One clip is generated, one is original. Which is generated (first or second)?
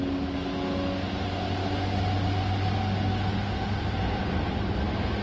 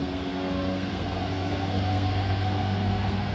second